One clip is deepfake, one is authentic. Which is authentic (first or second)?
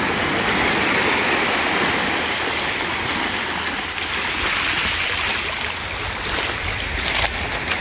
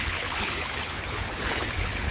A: first